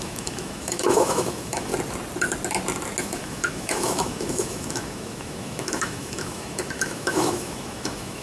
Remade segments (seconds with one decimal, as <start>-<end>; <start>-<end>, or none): 0.0-1.7; 3.0-8.2